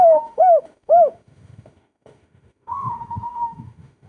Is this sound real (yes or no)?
no